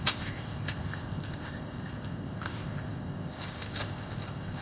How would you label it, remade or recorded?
remade